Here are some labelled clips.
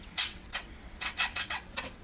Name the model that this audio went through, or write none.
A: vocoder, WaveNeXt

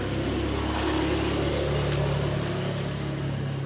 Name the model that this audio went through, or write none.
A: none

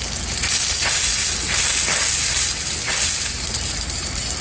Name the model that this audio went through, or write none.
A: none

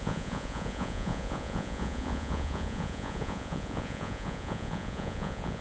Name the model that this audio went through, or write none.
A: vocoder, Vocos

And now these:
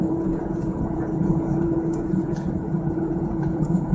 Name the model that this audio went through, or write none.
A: vocoder, Vocos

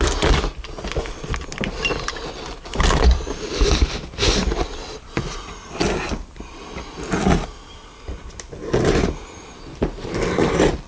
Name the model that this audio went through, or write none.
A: none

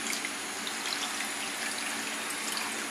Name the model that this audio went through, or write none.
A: none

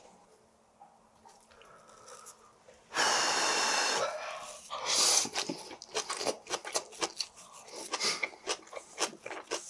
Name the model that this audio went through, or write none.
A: none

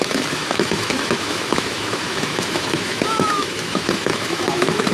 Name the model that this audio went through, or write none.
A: autoencoder, DAC-VAE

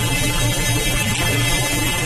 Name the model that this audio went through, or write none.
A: vocoder, BigVGAN v2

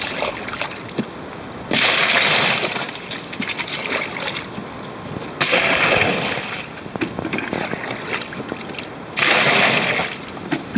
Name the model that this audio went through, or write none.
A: none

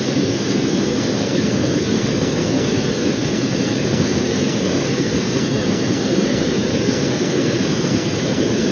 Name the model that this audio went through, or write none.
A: codec, SNAC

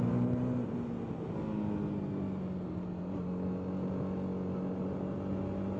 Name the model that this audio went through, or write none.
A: none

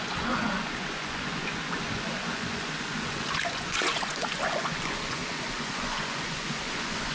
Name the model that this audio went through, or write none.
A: vocoder, Vocos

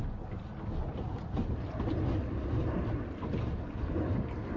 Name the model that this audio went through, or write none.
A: none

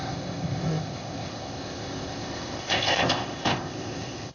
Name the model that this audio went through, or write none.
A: codec, ZipCodec